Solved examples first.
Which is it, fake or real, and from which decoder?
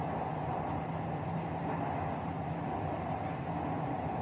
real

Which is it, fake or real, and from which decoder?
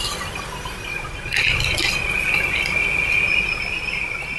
real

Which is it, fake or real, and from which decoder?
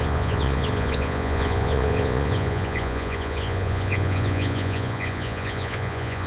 fake, vocoder, Vocos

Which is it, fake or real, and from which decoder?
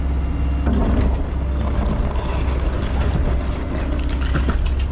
real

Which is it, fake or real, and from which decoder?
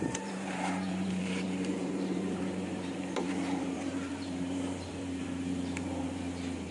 fake, vocoder, BigVGAN v2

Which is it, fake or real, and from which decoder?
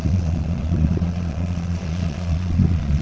fake, vocoder, Vocos